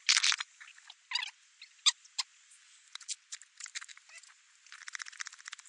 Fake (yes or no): no